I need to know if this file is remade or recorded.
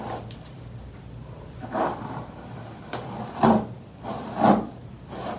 remade